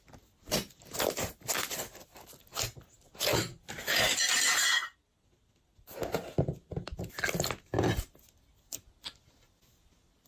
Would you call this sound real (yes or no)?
yes